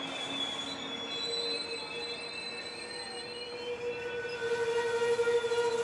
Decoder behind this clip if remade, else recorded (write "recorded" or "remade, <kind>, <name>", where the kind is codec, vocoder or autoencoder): recorded